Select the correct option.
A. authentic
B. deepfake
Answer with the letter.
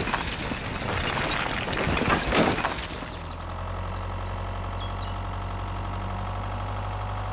A